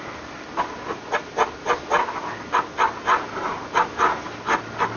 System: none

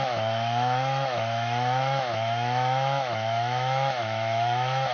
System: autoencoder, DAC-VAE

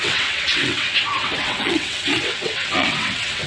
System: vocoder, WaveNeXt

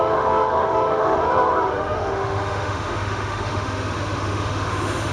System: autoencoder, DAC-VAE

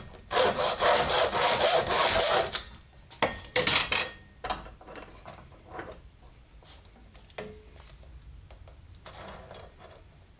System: none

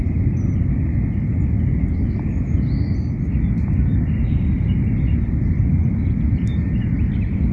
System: none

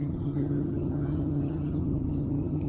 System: vocoder, HiFi-GAN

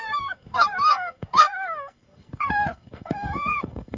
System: codec, SNAC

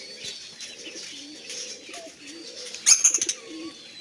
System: none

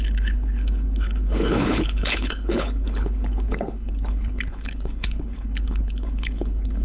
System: codec, HILCodec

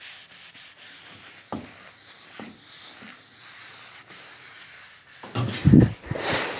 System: none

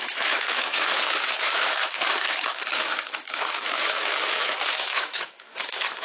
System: autoencoder, DAC-VAE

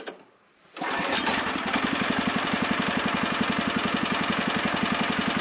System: none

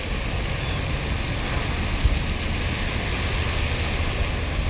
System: none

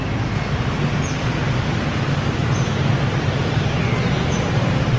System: none